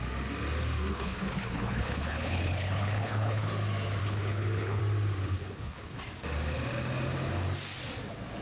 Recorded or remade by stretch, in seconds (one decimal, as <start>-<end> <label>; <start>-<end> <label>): 0.0-0.9 recorded; 0.9-3.5 remade; 3.5-4.0 recorded; 4.0-4.8 remade; 4.8-5.2 recorded; 5.2-6.0 remade; 6.0-8.4 recorded